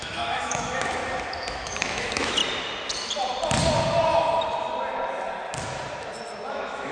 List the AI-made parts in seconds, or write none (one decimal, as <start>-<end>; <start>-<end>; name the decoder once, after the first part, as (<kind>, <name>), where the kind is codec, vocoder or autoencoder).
0.0-1.0 (autoencoder, DAC-VAE); 1.5-2.4; 6.5-6.9